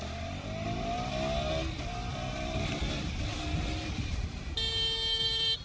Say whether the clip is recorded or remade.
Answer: recorded